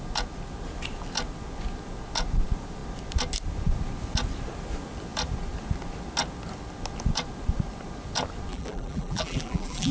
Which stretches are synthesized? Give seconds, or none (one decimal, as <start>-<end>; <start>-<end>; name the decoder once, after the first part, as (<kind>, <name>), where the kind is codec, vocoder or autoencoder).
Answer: 8.5-9.9 (vocoder, BigVGAN v2)